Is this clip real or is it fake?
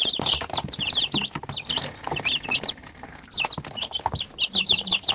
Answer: real